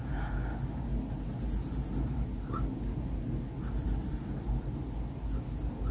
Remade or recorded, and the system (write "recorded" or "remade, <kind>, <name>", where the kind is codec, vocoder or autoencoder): recorded